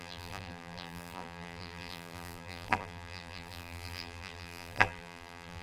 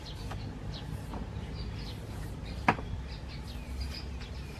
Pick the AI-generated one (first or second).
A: first